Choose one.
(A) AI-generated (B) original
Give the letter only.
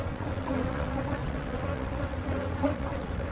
A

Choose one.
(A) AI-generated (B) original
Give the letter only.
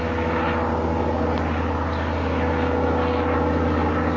B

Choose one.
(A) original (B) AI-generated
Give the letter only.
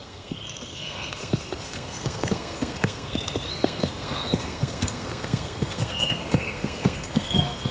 B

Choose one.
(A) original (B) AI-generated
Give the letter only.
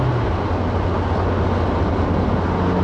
A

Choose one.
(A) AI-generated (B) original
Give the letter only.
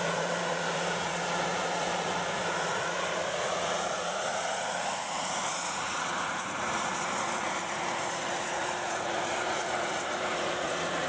A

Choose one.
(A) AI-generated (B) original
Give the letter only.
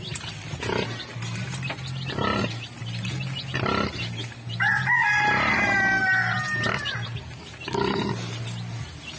B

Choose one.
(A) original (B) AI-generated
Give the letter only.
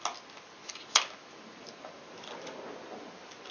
A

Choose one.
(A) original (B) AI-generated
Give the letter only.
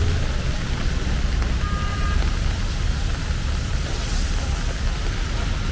A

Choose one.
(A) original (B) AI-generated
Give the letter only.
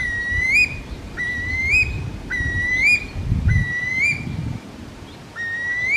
A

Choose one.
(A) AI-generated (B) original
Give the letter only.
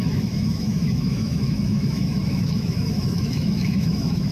A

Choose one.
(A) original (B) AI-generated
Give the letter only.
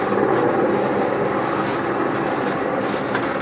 A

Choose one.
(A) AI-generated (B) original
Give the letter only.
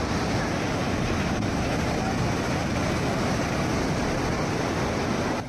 B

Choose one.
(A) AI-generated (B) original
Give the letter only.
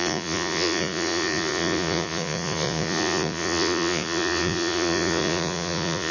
A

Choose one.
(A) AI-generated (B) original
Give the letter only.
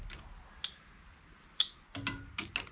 B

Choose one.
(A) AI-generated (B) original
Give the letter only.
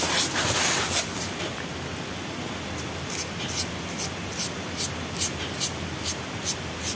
B